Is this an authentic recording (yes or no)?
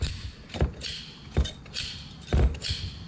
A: yes